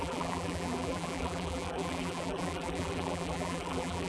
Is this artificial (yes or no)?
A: yes